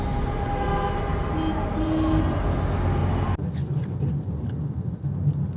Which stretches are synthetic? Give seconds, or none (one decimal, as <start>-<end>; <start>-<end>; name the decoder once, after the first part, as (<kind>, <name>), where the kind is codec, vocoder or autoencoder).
none